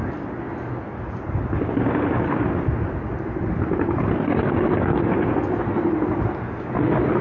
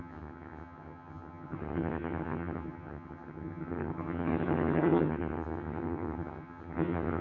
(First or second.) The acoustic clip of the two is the first